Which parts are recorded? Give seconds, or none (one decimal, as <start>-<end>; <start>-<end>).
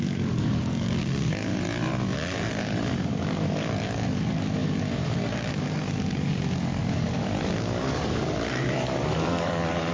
1.5-2.5